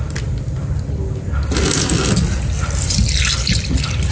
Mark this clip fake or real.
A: real